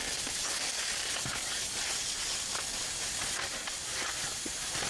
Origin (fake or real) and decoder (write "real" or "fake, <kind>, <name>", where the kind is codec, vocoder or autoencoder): real